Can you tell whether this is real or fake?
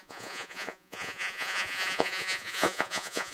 fake